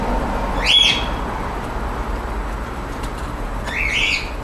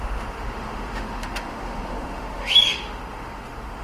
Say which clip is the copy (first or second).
second